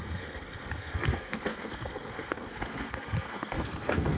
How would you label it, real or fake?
fake